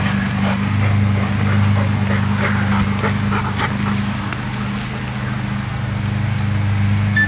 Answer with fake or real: real